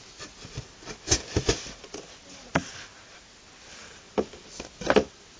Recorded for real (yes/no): yes